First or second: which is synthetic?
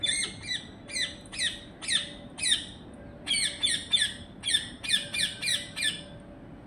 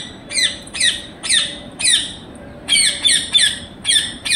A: second